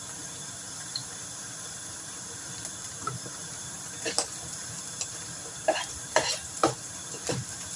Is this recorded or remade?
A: remade